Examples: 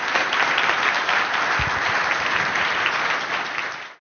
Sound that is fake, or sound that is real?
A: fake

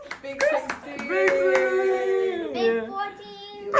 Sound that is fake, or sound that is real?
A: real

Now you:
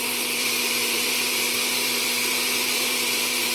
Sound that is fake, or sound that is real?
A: fake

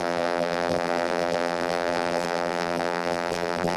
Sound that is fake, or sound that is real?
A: fake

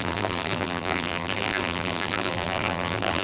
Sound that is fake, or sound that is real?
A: fake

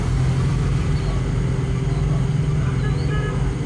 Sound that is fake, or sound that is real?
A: real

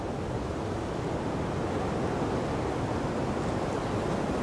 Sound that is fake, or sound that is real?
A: real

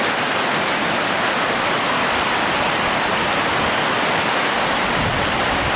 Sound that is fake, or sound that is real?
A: real